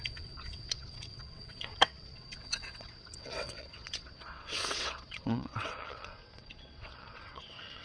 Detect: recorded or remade remade